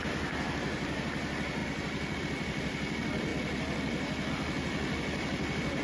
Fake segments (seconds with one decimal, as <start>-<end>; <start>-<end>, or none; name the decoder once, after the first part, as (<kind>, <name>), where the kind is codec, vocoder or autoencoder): none